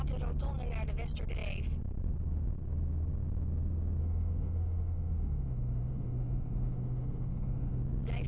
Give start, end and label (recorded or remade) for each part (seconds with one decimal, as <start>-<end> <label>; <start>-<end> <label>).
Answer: 0.0-4.0 recorded; 4.0-7.8 remade; 7.8-8.3 recorded